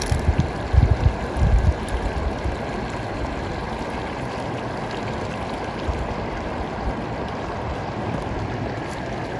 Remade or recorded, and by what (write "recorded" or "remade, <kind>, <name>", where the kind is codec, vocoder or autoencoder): recorded